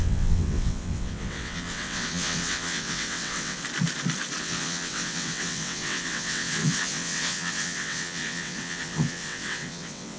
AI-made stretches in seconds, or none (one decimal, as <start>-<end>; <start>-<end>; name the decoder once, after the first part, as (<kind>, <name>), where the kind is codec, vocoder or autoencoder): 0.0-3.6 (vocoder, WaveNeXt); 4.4-10.2